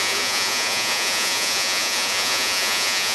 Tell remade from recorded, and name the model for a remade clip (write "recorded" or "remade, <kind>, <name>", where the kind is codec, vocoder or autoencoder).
remade, vocoder, Vocos